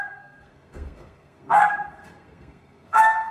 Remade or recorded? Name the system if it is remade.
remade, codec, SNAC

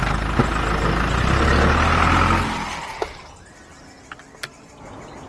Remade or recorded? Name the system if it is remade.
recorded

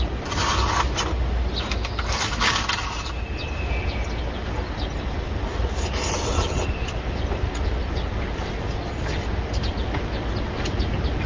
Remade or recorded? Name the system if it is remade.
recorded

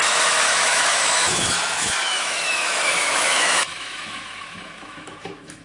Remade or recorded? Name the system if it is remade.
remade, autoencoder, DAC-VAE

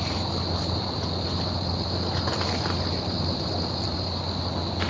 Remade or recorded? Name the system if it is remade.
recorded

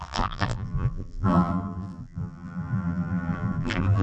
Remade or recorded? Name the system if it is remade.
remade, vocoder, BigVGAN v2